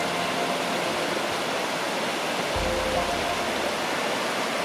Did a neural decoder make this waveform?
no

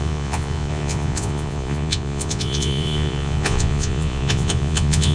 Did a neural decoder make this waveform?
yes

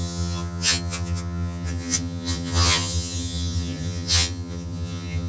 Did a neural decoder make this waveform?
yes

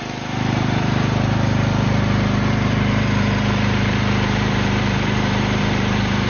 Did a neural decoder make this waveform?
yes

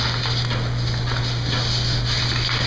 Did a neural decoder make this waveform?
no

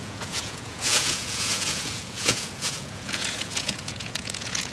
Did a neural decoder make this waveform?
yes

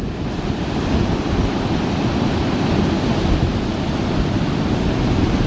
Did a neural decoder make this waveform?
no